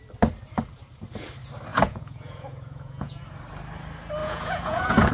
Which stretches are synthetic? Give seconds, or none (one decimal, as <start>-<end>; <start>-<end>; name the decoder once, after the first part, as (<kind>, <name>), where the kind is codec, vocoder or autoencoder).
1.7-3.2 (vocoder, Vocos); 4.2-5.1